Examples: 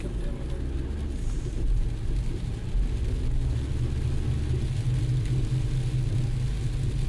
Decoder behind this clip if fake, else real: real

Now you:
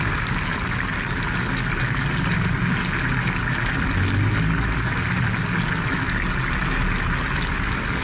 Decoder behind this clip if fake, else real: real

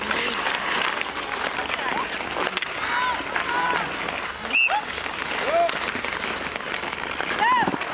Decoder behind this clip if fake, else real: real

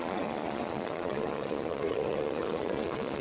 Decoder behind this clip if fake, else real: fake, vocoder, Vocos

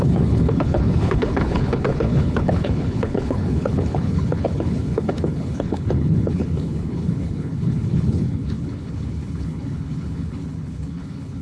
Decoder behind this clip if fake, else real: fake, codec, HILCodec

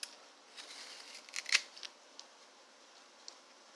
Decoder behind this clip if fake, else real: real